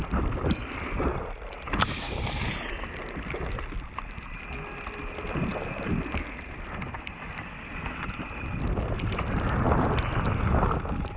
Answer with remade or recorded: recorded